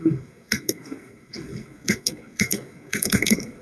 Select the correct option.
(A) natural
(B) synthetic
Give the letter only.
B